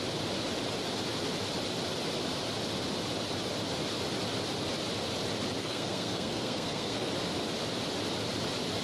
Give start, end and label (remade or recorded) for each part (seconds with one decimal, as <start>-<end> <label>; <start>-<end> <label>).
0.0-5.6 recorded; 5.6-7.1 remade; 7.1-8.8 recorded